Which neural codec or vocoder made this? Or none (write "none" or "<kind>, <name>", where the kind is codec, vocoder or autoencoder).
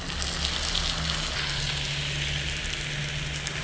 none